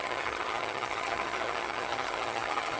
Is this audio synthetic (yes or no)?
yes